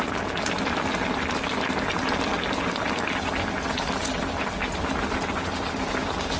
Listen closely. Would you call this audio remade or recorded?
recorded